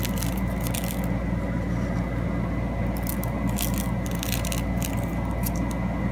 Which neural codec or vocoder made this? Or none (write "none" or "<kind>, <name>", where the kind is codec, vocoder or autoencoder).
none